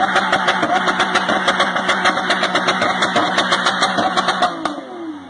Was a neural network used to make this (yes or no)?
no